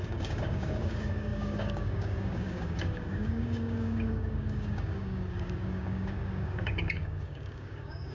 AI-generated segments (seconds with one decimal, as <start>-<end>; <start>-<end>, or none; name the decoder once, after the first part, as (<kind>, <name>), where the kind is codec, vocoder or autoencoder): 0.0-8.1 (codec, DAC)